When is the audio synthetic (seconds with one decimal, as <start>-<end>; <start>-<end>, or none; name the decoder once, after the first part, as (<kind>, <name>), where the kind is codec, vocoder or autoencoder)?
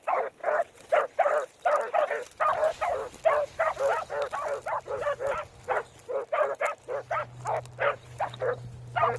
0.4-1.0 (vocoder, WaveNeXt)